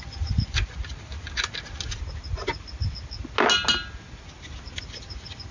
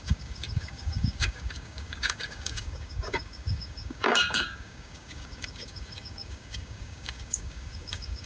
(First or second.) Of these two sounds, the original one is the first